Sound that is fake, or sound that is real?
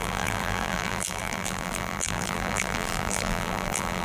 fake